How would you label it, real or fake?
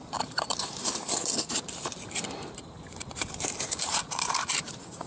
fake